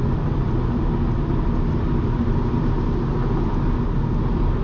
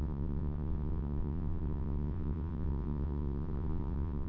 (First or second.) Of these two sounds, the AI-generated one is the second